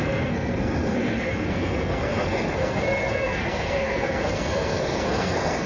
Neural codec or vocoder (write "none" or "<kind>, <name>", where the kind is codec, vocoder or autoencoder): codec, SNAC